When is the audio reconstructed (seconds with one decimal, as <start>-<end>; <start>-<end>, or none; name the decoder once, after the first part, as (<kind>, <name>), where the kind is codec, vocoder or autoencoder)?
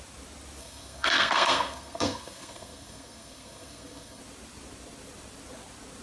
0.6-4.2 (codec, SNAC)